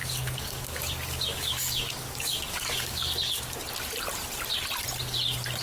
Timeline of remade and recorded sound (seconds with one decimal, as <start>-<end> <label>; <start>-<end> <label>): 0.0-3.4 remade; 3.4-5.6 recorded